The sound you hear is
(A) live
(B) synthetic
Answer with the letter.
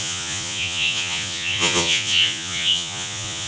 B